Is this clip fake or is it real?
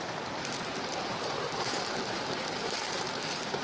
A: real